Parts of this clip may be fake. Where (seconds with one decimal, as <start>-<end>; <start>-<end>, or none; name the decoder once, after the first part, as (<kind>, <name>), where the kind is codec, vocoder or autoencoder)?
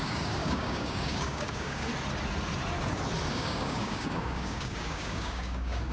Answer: 0.0-1.9 (codec, DAC); 3.3-5.9